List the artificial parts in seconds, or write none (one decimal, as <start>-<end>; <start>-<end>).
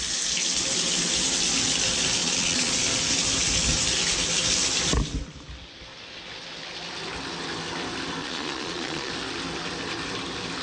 2.2-2.7; 8.2-9.1